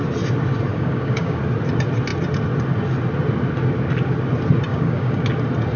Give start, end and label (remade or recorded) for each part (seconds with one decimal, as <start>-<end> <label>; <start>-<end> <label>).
0.0-0.7 recorded; 0.7-1.4 remade; 1.4-4.7 recorded; 4.7-5.2 remade; 5.2-5.8 recorded